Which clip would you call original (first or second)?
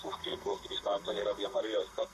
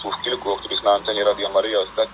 second